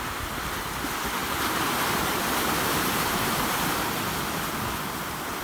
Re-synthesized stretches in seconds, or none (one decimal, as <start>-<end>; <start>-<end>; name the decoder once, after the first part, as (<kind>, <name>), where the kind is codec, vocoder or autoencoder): 1.2-3.9 (vocoder, BigVGAN v2)